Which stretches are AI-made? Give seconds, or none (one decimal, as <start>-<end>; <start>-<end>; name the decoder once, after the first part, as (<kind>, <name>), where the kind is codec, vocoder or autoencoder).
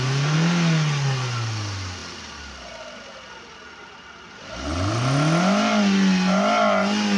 none